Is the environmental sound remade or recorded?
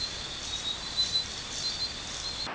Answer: remade